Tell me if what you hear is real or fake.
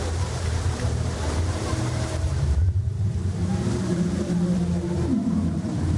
fake